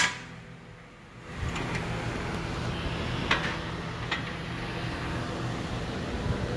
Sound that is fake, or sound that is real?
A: real